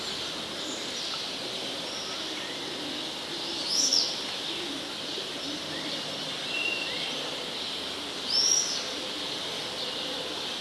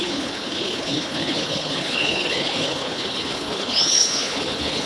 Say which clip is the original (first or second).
first